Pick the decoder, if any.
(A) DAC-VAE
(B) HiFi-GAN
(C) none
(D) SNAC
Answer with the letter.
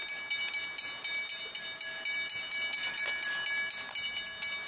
C